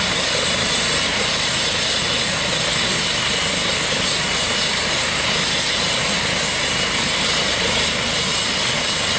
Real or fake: real